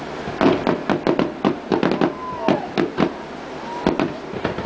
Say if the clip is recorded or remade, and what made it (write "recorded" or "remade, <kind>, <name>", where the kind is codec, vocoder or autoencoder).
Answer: recorded